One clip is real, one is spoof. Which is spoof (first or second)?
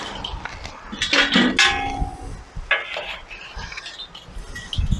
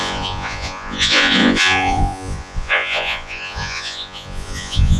second